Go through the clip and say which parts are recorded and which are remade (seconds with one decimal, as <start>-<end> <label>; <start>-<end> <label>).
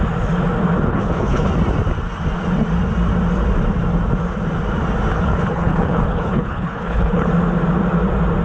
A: 0.0-0.9 recorded; 0.9-1.5 remade; 1.5-5.1 recorded; 5.1-7.3 remade; 7.3-8.4 recorded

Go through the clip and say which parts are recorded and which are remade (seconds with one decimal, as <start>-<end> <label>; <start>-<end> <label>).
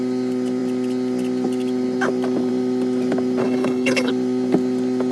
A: 0.0-3.4 recorded; 3.4-4.1 remade; 4.1-5.1 recorded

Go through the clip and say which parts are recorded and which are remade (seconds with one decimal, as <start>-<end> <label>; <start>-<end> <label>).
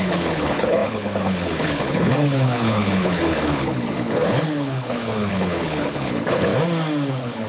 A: 0.0-6.5 remade; 6.5-7.1 recorded; 7.1-7.5 remade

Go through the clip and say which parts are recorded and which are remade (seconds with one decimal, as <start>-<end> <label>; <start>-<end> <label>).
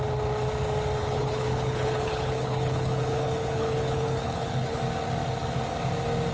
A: 0.0-1.0 recorded; 1.0-4.8 remade; 4.8-6.3 recorded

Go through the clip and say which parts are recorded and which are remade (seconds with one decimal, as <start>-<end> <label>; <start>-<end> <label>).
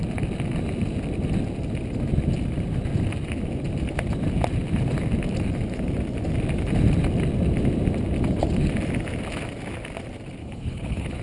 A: 0.0-10.4 recorded; 10.4-11.2 remade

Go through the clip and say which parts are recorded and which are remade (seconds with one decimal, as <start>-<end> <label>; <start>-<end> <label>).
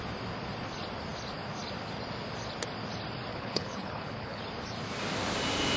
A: 0.0-3.3 recorded; 3.3-4.4 remade; 4.4-5.8 recorded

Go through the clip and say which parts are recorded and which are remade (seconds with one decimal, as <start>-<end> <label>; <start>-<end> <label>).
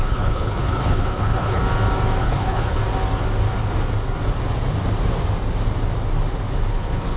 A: 0.0-1.6 remade; 1.6-2.2 recorded; 2.2-2.8 remade; 2.8-6.7 recorded; 6.7-7.2 remade